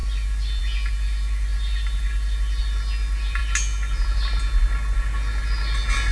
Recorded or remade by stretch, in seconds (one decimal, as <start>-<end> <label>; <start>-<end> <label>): 0.0-6.1 recorded